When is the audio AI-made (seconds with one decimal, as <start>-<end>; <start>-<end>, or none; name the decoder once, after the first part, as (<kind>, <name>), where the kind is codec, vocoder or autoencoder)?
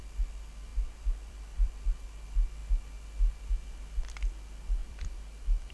0.7-1.8 (vocoder, BigVGAN v2); 4.8-5.7